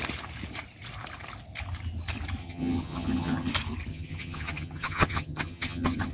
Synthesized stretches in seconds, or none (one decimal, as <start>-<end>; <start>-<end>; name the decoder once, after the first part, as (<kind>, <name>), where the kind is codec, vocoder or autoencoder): 2.4-3.5 (vocoder, HiFi-GAN); 3.9-6.1